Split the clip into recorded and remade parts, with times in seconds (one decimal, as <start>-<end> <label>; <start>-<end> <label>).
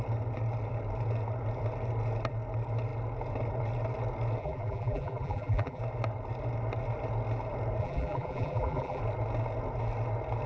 0.0-4.4 recorded; 4.4-5.8 remade; 5.8-7.8 recorded; 7.8-9.0 remade; 9.0-10.5 recorded